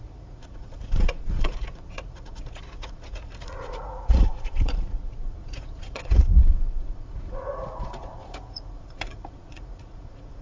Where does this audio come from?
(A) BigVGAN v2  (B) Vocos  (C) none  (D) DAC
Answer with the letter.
B